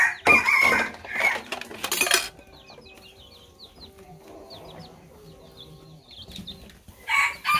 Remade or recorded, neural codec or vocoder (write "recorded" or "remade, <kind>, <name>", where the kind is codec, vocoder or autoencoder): recorded